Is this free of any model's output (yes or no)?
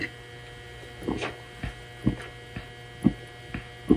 yes